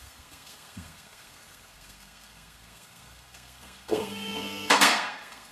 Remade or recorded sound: remade